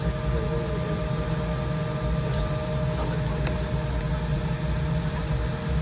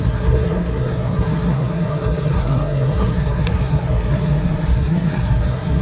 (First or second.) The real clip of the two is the first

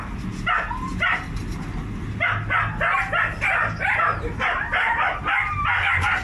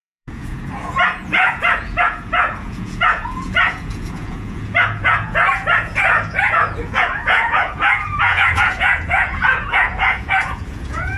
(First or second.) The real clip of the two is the first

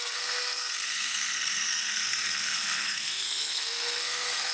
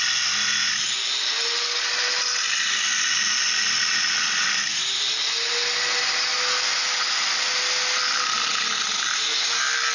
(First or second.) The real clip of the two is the second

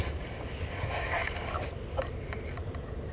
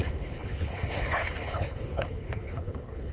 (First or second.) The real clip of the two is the first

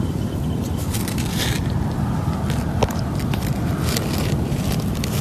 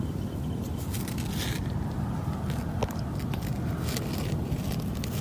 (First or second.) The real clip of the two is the second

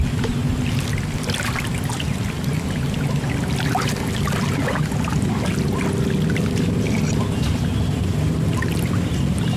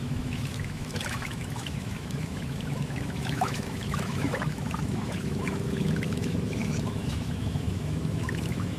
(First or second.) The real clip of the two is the first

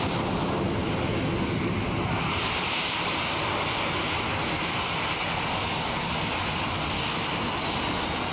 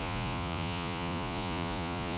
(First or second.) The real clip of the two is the first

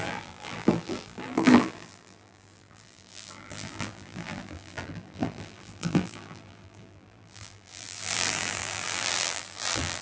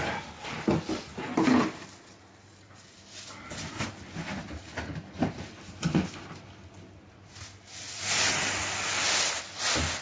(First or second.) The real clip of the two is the second